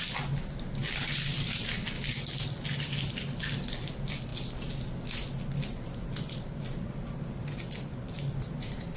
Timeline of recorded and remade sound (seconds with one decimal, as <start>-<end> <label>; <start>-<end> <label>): 0.0-9.0 recorded